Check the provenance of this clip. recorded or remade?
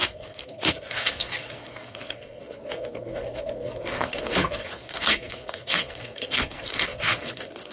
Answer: remade